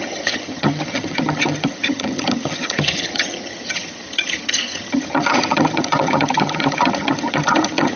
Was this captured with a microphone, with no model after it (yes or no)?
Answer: no